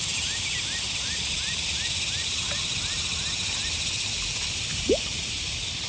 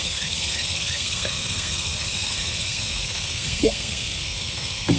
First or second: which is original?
first